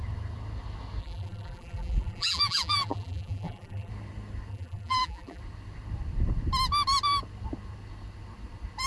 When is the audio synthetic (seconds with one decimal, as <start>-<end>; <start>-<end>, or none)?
1.0-3.9; 4.5-5.4